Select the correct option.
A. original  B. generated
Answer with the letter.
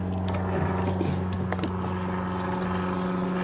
A